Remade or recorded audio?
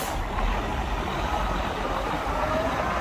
recorded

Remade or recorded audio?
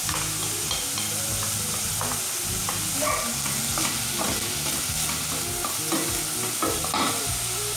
recorded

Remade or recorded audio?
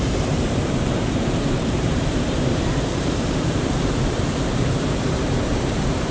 remade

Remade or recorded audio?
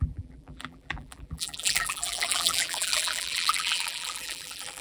remade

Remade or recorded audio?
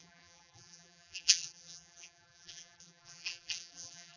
remade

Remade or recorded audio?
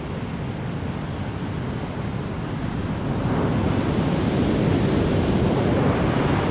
recorded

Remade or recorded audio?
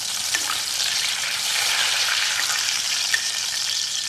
remade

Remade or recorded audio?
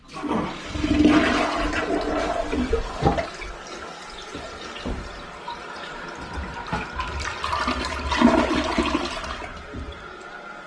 recorded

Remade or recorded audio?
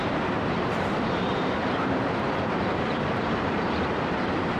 remade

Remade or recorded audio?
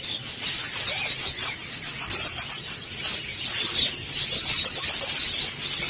recorded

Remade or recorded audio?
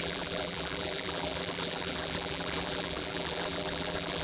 remade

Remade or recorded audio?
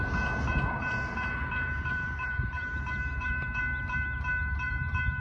remade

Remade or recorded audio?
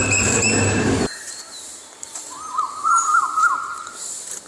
remade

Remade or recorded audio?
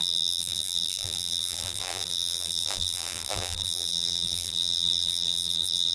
remade